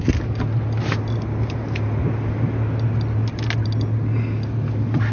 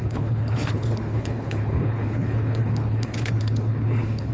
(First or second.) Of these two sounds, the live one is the first